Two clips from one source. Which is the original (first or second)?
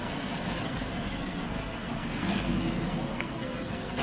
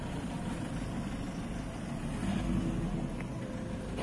second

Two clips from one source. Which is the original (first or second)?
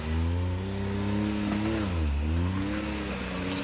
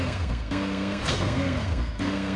first